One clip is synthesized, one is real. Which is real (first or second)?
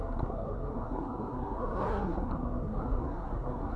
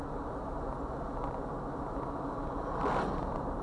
second